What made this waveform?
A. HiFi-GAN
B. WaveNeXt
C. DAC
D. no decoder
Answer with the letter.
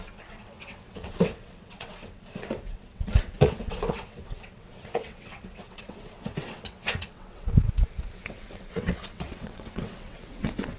B